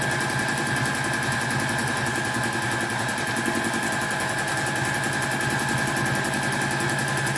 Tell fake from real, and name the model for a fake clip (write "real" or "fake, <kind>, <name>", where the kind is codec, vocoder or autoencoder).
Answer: real